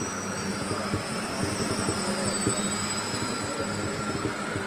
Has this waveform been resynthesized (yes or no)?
no